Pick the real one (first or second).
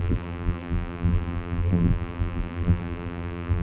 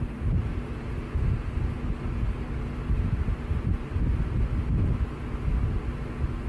second